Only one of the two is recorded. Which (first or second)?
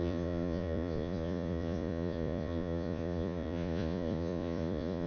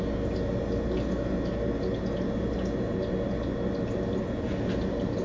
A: second